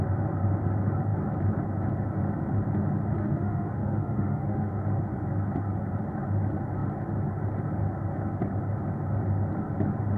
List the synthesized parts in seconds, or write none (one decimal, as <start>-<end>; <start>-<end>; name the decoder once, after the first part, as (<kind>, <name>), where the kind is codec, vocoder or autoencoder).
3.2-4.8 (autoencoder, DAC-VAE)